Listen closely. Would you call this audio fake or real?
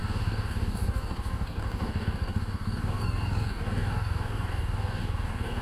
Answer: fake